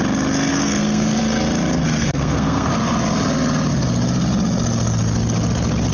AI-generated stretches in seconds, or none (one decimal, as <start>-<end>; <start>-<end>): 0.5-1.2; 2.0-2.7